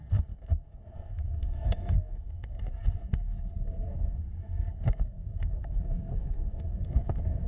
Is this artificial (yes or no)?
yes